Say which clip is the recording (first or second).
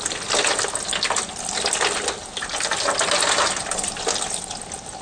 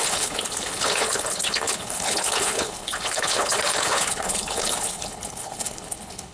first